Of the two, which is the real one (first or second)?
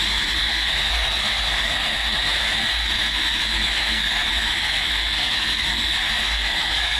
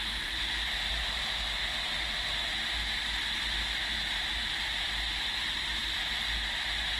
second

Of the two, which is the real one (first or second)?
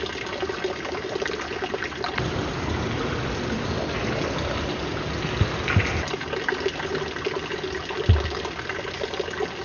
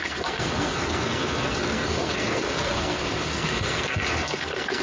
first